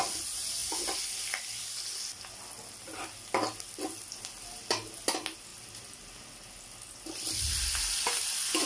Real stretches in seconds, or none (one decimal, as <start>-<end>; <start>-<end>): 0.0-8.7